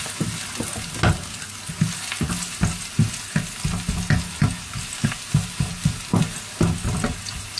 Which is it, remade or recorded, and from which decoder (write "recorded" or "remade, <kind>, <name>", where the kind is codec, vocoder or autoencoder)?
recorded